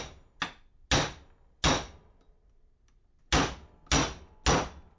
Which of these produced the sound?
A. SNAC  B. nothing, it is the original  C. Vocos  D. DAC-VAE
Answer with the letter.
B